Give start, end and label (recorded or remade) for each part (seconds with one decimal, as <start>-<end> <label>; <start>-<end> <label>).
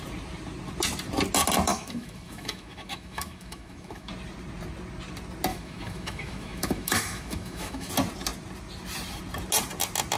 0.0-1.7 recorded; 1.7-4.1 remade; 4.1-5.5 recorded; 5.5-7.9 remade; 7.9-10.2 recorded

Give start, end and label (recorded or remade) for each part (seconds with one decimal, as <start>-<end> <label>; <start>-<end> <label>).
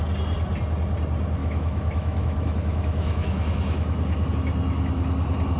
0.0-1.4 recorded; 1.4-4.3 remade; 4.3-5.6 recorded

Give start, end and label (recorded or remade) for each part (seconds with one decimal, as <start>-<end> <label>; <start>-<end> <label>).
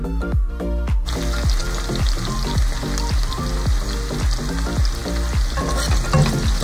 0.0-6.6 recorded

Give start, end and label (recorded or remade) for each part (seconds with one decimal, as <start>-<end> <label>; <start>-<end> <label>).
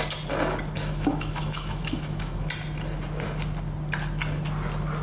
0.0-0.8 recorded; 0.8-2.5 remade; 2.5-5.0 recorded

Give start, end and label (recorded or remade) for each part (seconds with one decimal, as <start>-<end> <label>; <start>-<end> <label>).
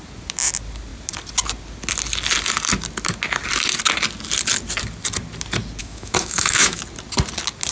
0.0-5.8 recorded; 5.8-6.8 remade; 6.8-7.7 recorded